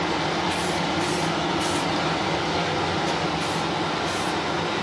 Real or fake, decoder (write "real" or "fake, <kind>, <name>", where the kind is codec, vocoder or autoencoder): real